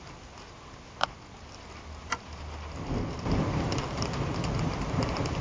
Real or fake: real